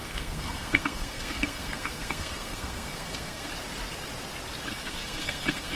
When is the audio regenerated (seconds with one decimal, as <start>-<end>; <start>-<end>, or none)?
0.0-3.5; 4.7-5.8